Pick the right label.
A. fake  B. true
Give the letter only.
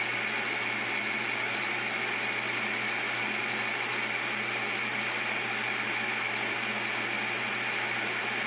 B